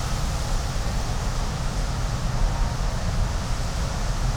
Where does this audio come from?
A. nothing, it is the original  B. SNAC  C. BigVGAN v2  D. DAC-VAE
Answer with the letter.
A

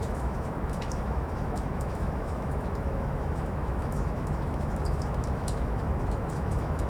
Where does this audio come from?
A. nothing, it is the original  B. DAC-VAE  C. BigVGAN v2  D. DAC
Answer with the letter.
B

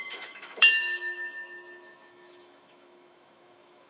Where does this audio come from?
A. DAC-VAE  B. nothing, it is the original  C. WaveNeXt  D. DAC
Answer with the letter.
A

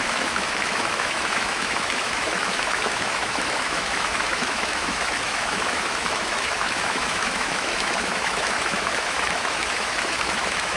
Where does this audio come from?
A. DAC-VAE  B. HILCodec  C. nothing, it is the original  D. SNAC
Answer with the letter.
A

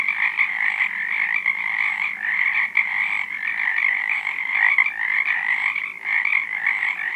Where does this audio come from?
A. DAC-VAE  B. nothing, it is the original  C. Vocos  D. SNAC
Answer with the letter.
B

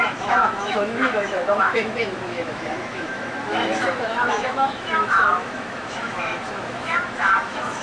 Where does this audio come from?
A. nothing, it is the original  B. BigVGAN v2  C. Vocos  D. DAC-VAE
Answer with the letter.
D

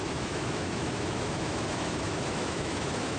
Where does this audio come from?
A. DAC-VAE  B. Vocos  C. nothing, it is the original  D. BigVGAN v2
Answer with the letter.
A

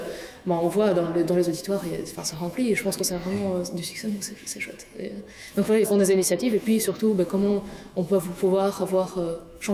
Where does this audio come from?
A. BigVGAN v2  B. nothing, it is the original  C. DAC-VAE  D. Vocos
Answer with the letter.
C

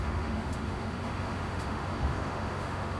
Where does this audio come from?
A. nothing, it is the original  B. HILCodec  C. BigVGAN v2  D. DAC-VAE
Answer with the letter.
D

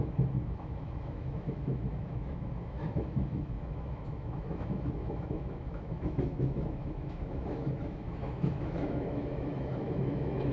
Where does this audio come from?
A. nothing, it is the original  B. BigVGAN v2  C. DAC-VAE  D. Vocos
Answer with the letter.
C